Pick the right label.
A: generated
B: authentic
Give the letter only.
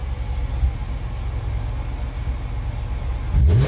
B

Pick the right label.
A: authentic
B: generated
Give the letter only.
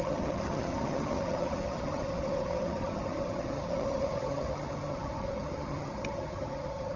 B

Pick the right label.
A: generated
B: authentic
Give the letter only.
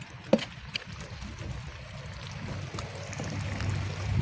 B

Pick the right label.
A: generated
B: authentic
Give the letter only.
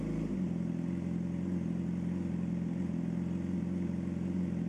B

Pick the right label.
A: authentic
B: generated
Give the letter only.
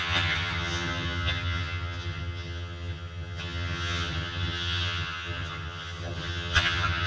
B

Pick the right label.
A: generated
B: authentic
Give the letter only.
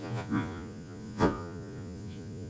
A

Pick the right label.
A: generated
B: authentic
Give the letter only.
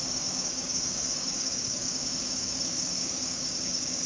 A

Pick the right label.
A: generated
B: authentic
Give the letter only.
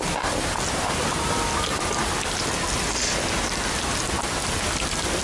B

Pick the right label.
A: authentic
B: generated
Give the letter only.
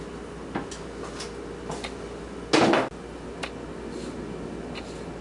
A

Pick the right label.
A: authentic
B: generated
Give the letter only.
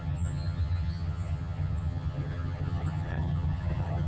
B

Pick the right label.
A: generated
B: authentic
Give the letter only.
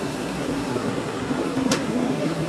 A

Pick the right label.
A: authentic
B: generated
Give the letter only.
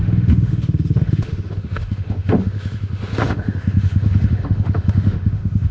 B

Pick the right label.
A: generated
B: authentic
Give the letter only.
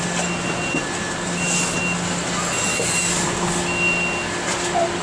B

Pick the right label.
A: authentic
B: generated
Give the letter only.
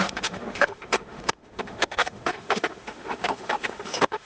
B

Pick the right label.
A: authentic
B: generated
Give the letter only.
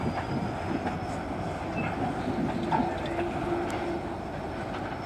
A